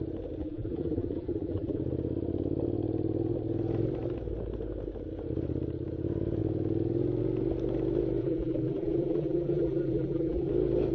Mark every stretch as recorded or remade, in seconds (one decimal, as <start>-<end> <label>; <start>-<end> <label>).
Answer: 0.0-0.4 recorded; 0.4-1.8 remade; 1.8-8.2 recorded; 8.2-10.5 remade; 10.5-10.9 recorded